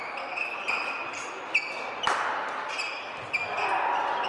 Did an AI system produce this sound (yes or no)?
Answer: no